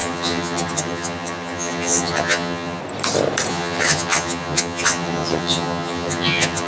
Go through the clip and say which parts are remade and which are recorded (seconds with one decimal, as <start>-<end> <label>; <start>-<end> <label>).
0.0-2.8 remade; 2.8-3.5 recorded; 3.5-6.7 remade